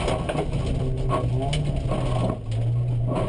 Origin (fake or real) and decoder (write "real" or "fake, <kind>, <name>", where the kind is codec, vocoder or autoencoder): real